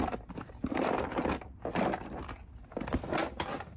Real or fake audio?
real